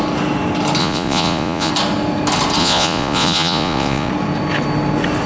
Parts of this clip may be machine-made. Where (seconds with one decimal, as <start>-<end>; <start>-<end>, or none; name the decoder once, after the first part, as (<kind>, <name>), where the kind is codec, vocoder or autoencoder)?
0.8-1.7 (vocoder, Vocos); 2.6-4.1